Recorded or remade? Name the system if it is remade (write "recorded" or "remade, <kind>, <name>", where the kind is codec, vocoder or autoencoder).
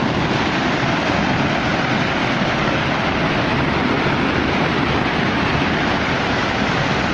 recorded